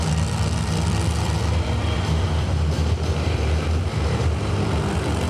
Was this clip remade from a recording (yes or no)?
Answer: yes